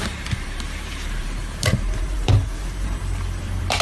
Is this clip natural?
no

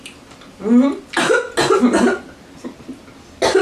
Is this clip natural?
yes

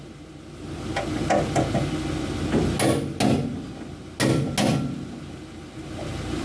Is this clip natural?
yes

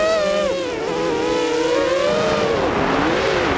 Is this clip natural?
yes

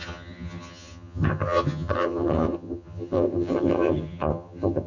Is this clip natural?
no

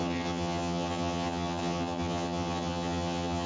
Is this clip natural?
no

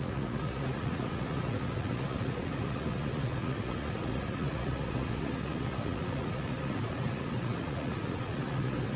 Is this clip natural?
no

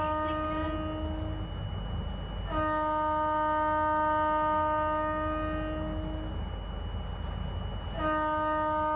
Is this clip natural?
yes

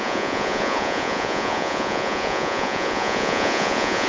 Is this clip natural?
no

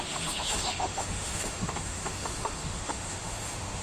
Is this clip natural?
no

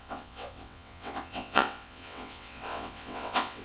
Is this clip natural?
no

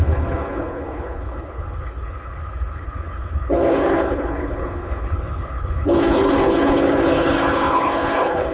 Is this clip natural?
no